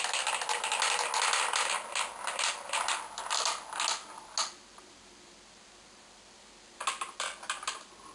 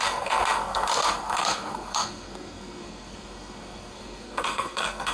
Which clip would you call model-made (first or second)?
second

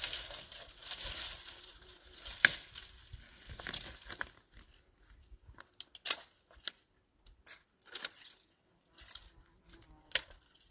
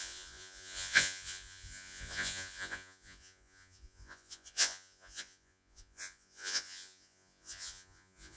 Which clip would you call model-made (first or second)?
second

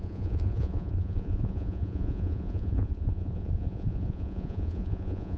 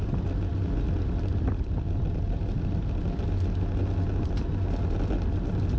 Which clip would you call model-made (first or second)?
first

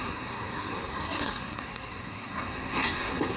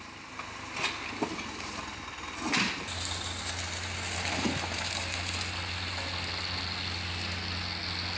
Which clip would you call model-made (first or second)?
first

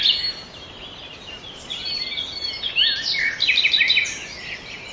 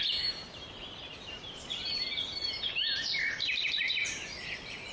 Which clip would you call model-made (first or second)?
second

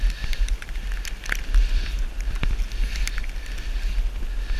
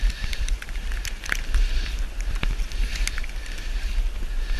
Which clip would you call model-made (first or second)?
second